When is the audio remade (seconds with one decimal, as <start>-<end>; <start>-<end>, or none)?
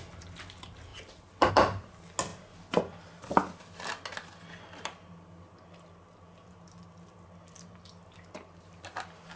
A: none